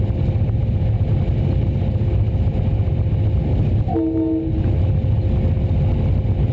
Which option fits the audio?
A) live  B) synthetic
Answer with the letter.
A